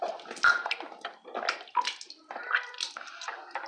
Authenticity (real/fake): real